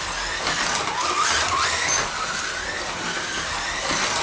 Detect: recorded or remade recorded